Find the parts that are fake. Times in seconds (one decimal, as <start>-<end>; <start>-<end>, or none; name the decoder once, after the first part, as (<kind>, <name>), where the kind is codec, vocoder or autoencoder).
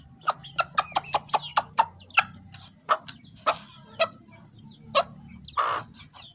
none